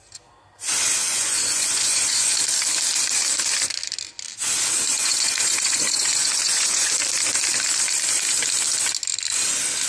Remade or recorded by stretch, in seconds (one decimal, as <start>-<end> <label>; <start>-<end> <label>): 0.0-1.0 recorded; 1.0-2.4 remade; 2.4-4.9 recorded; 4.9-6.9 remade; 6.9-9.9 recorded